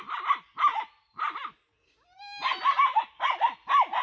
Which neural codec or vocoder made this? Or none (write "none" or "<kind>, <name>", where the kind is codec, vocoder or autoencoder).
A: none